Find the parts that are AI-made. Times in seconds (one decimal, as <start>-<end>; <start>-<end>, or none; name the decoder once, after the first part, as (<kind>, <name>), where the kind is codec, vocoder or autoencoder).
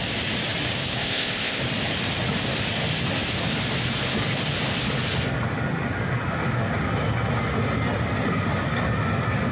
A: 1.0-1.6 (codec, ZipCodec)